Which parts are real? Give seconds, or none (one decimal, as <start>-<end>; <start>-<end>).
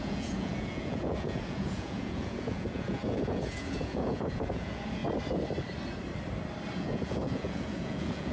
5.0-6.8